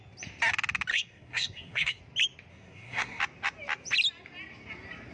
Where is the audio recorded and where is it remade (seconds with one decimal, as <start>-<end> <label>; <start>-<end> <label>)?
0.0-0.9 recorded; 0.9-2.0 remade; 2.0-2.5 recorded; 2.5-3.2 remade; 3.2-5.1 recorded